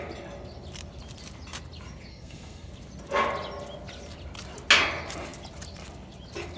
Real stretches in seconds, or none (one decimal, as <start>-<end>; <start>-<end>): 0.0-2.1; 2.7-6.6